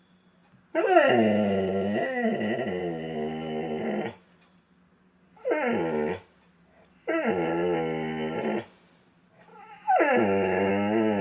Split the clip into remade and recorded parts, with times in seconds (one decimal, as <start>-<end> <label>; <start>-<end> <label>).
0.0-9.5 recorded; 9.5-10.7 remade; 10.7-11.2 recorded